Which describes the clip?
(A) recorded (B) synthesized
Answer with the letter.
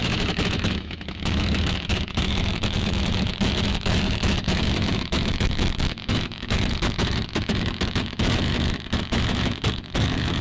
B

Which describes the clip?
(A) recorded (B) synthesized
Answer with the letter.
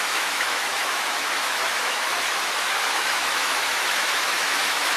B